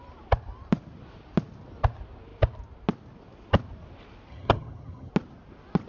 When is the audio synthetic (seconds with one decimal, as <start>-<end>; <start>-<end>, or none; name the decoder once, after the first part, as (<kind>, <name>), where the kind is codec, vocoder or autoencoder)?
4.3-5.1 (vocoder, HiFi-GAN)

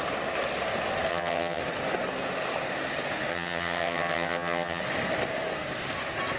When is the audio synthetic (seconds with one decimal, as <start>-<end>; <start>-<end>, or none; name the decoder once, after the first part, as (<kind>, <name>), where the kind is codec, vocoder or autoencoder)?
1.1-1.6 (vocoder, HiFi-GAN); 3.3-4.8

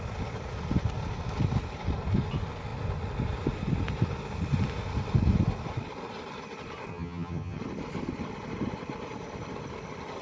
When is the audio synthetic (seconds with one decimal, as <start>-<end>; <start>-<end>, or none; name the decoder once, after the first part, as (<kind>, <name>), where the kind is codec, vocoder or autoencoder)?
6.9-7.6 (vocoder, HiFi-GAN)